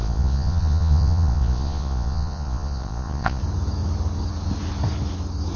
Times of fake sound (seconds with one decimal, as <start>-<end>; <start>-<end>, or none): 0.0-3.4